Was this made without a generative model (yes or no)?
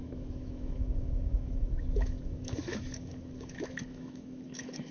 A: no